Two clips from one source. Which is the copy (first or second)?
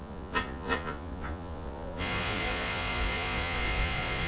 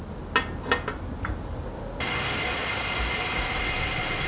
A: first